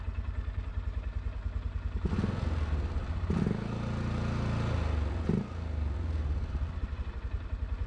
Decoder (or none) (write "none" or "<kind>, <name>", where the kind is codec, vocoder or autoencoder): none